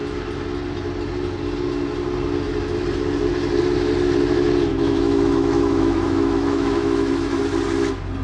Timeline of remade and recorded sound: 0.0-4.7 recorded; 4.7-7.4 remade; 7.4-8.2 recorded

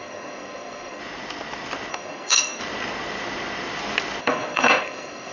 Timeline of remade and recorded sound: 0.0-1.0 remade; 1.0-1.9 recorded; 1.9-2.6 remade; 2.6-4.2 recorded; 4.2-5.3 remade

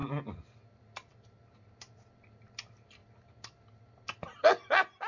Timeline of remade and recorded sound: 0.0-5.1 recorded

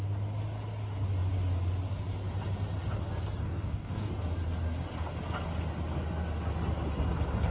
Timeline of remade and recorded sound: 0.0-3.4 recorded; 3.4-4.1 remade; 4.1-7.5 recorded